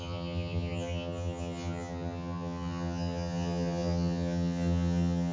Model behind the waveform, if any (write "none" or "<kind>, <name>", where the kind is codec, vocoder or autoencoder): vocoder, HiFi-GAN